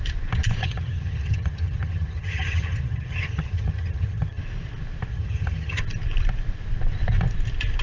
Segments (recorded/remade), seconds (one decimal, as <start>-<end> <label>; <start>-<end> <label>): 0.0-0.6 recorded; 0.6-4.4 remade; 4.4-5.1 recorded; 5.1-5.8 remade; 5.8-7.8 recorded